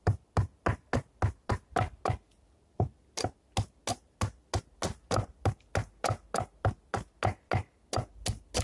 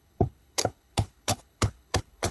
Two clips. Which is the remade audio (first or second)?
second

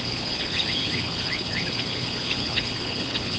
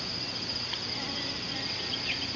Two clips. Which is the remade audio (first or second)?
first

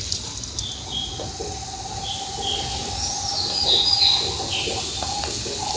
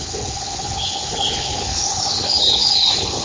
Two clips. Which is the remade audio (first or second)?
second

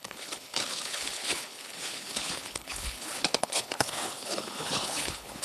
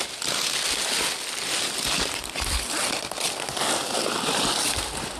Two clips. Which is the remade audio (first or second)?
first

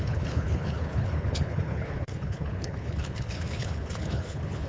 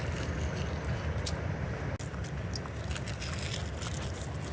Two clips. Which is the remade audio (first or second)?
first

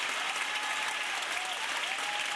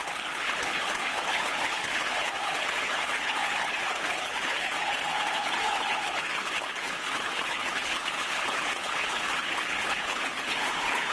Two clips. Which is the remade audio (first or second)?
second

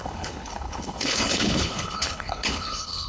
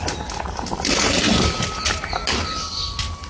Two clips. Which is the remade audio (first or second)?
first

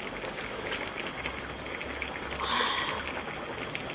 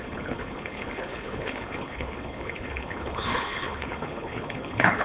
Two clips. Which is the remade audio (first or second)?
second